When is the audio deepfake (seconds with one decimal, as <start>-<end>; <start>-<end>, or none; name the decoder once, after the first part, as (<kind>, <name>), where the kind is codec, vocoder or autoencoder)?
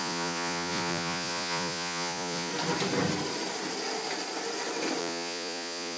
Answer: 0.0-2.5 (vocoder, Vocos); 5.0-6.0